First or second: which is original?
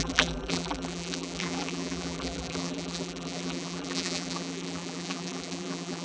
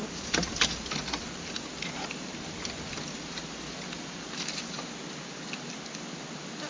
second